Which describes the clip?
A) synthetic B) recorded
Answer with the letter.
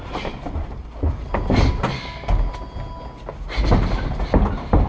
B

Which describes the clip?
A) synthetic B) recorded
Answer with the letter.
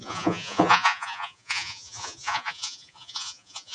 A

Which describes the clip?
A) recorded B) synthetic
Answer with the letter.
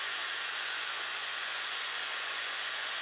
B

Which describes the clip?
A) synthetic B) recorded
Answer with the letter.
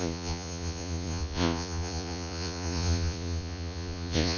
A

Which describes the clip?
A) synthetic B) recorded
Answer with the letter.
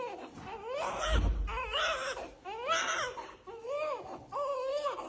B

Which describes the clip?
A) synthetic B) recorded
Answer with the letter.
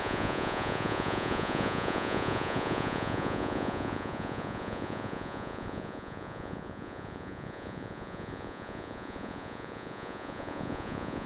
A